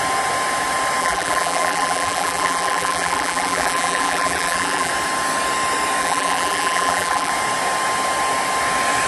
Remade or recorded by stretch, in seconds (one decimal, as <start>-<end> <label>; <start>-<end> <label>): 0.0-1.0 recorded; 1.0-4.9 remade; 4.9-6.0 recorded; 6.0-7.3 remade; 7.3-9.1 recorded